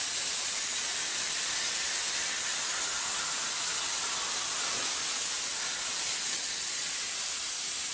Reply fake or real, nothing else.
real